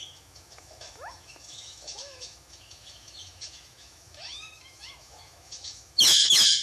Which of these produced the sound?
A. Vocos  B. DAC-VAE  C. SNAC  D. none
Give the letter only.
B